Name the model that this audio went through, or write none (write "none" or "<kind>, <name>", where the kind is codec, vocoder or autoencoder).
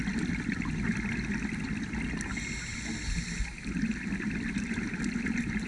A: none